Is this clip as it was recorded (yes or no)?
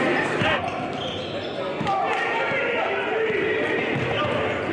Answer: yes